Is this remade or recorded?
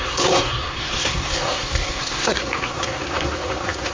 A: remade